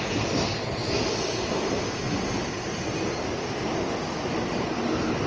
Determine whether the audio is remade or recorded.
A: recorded